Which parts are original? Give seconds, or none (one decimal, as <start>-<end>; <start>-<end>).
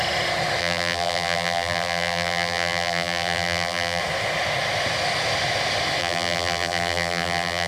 0.0-0.6; 4.0-6.0